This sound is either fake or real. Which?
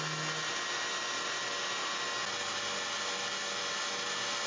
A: real